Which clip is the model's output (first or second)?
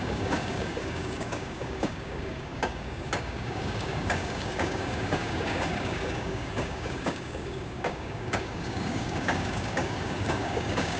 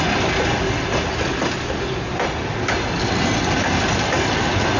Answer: first